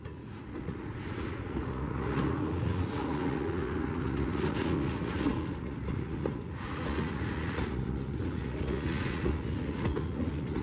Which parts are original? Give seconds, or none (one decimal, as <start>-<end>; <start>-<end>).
none

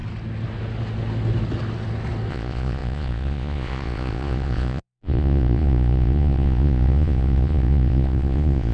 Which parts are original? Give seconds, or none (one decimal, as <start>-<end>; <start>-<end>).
0.0-2.3